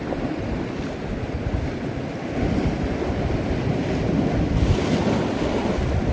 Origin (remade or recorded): recorded